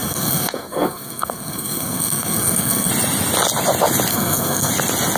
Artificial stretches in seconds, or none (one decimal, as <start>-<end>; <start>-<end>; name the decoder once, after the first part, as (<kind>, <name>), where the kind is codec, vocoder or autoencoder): 0.0-2.9 (codec, SNAC); 4.1-4.7